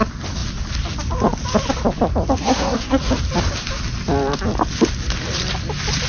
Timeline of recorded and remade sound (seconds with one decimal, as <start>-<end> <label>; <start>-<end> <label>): 0.0-2.4 recorded; 2.4-3.0 remade; 3.0-6.1 recorded